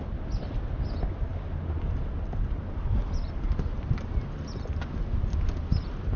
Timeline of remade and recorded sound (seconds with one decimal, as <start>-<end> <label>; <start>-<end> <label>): 0.0-6.2 recorded